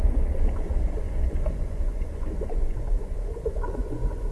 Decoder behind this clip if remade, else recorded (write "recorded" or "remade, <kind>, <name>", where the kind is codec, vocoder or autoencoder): remade, vocoder, Vocos